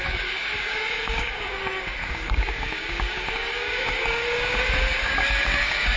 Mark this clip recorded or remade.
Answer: remade